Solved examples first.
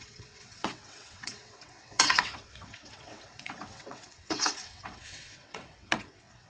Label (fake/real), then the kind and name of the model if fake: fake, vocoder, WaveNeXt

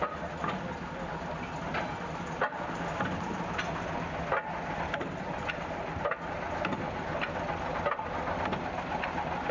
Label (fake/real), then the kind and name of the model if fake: real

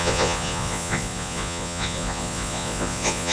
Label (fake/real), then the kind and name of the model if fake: fake, vocoder, Vocos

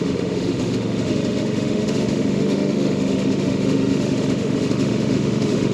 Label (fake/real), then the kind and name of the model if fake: fake, autoencoder, DAC-VAE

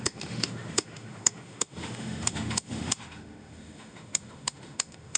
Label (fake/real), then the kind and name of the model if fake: fake, autoencoder, DAC-VAE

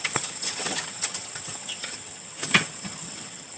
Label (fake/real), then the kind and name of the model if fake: fake, vocoder, HiFi-GAN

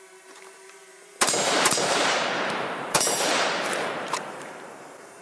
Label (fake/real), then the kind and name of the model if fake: fake, vocoder, BigVGAN v2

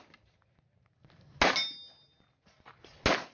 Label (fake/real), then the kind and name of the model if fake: real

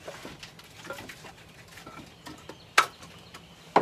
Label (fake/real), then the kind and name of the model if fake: real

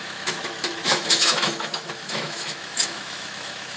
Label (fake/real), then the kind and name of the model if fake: fake, autoencoder, DAC-VAE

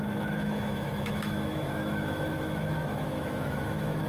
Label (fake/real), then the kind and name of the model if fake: fake, autoencoder, DAC-VAE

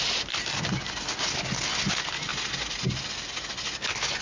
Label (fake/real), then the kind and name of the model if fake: real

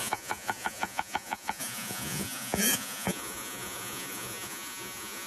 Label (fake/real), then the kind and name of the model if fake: fake, vocoder, Vocos